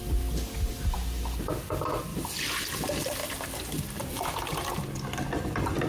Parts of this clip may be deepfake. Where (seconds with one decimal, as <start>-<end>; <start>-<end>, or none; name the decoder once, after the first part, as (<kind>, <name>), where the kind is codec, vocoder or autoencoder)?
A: 3.2-5.9 (vocoder, BigVGAN v2)